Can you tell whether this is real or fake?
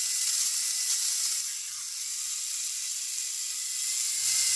fake